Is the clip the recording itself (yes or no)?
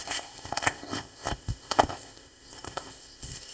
no